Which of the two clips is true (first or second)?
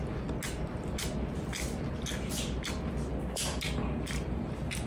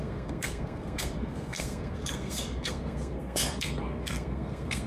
first